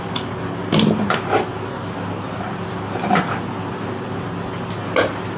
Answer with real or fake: real